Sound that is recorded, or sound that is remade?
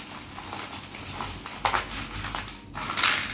recorded